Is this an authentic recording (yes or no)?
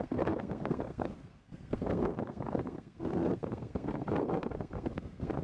no